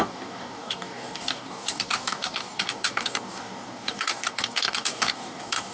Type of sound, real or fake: fake